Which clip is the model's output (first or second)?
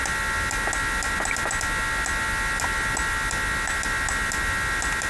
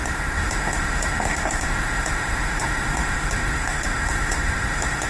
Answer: second